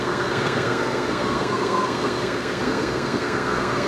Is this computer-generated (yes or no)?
yes